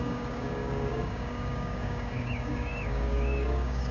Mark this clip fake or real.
fake